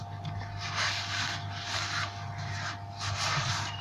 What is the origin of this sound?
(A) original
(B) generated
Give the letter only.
A